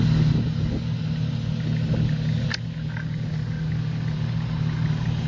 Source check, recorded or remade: recorded